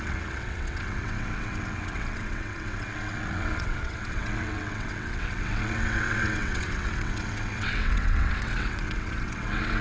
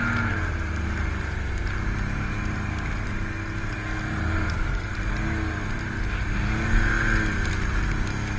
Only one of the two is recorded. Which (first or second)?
second